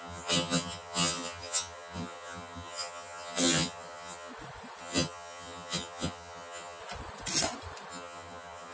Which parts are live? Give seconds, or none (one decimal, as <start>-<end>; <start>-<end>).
4.3-4.8; 6.8-7.9